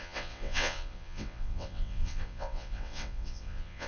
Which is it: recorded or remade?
remade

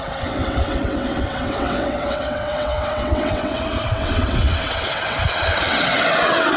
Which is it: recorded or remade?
remade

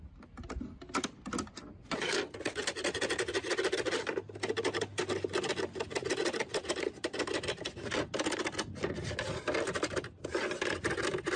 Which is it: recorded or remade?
recorded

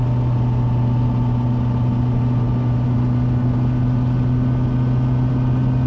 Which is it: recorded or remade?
recorded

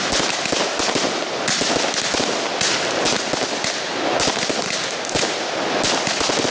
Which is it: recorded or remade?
recorded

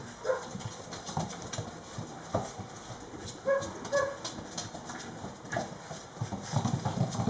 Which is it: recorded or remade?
recorded